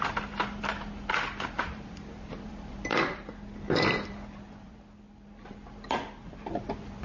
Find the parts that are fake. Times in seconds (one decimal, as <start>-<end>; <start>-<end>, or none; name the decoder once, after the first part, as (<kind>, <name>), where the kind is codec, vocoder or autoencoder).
none